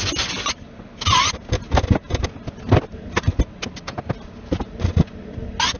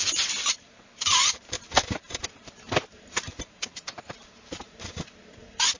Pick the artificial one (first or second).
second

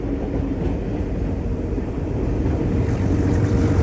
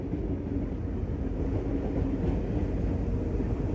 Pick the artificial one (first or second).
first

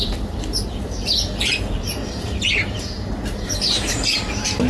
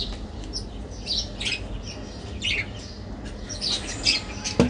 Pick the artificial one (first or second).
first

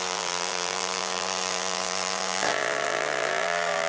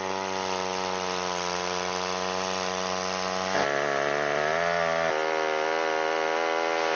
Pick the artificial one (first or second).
first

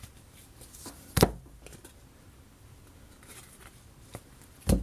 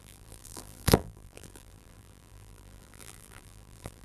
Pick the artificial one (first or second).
second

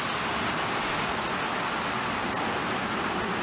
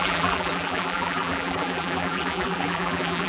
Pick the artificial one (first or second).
second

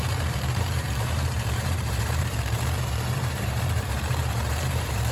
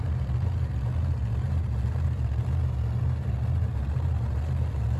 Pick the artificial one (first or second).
first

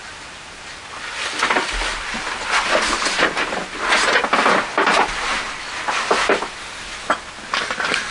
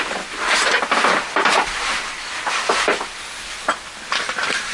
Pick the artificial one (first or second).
second